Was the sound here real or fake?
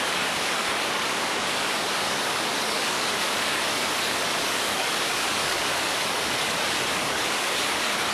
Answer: fake